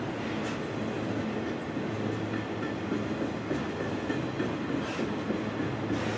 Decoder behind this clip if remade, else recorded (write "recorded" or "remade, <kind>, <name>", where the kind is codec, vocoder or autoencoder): recorded